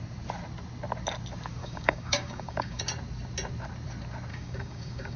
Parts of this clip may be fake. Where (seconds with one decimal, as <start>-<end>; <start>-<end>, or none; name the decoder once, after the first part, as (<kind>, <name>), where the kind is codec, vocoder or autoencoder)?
1.6-2.8 (codec, DAC); 4.3-5.2